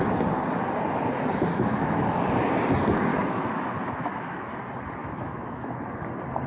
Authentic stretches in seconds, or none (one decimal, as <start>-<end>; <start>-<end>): 0.0-1.5; 2.2-3.1; 4.6-5.0; 5.8-6.5